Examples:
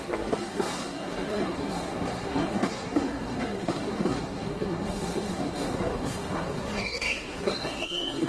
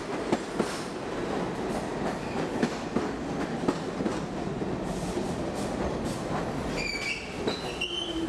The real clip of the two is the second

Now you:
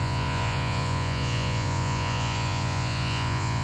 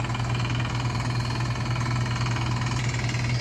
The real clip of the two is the second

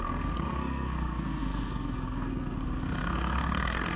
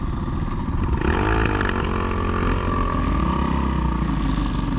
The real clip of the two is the second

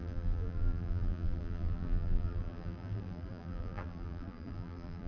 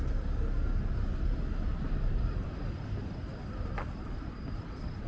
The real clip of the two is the second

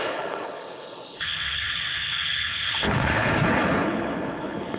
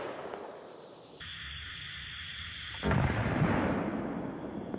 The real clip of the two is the second